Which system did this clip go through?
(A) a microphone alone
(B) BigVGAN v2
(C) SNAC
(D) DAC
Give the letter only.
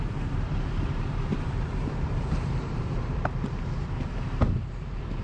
B